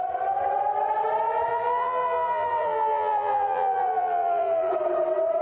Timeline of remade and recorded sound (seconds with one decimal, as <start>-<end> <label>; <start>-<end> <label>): 0.0-1.5 recorded; 1.5-4.7 remade; 4.7-5.4 recorded